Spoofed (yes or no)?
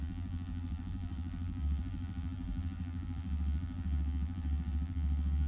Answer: yes